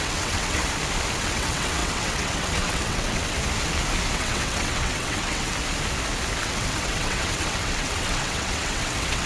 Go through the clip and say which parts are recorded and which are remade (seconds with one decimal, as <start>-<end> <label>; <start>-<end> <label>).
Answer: 0.0-0.6 remade; 0.6-1.2 recorded; 1.2-3.4 remade; 3.4-4.1 recorded; 4.1-5.5 remade; 5.5-6.4 recorded; 6.4-9.3 remade